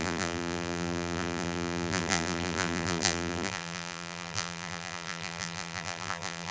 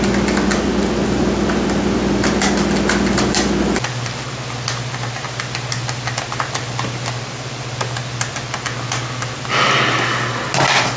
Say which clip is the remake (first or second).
first